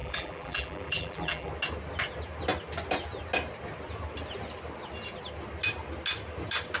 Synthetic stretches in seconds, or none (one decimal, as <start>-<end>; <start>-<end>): 0.0-1.5